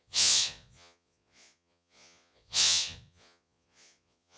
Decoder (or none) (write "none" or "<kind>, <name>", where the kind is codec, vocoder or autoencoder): vocoder, Vocos